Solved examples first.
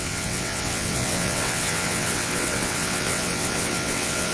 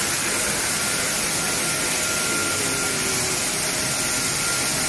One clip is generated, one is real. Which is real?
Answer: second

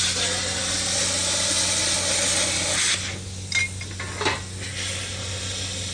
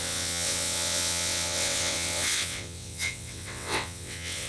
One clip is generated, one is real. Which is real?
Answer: first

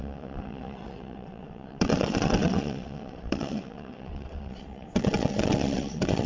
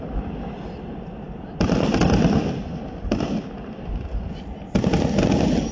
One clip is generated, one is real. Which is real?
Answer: second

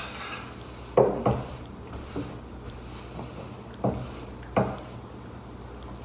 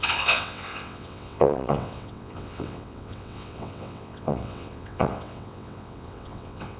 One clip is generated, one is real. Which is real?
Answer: first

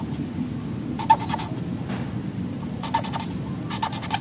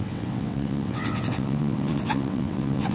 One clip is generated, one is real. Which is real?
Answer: first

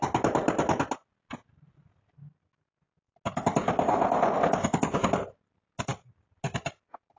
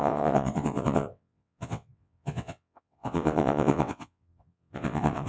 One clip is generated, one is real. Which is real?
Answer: first